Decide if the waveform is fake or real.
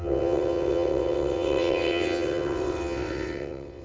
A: fake